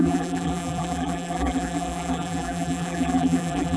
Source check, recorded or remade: remade